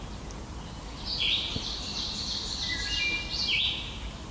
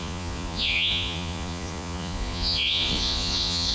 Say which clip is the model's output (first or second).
second